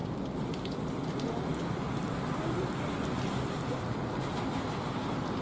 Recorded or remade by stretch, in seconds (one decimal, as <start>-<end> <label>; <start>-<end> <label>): 0.0-5.4 recorded